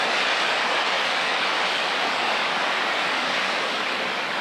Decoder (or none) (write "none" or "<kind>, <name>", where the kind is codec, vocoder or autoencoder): codec, DAC